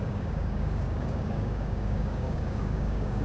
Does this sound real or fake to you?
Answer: fake